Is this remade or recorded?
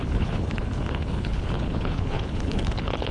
remade